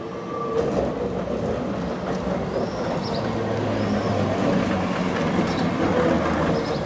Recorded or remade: recorded